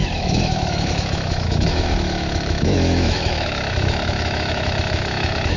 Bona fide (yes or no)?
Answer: no